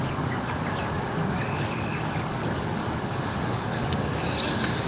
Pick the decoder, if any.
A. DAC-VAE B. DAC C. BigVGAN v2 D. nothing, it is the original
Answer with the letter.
B